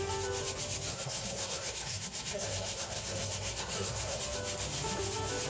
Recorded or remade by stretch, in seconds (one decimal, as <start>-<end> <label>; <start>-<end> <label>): 0.0-0.9 recorded; 0.9-4.2 remade; 4.2-5.5 recorded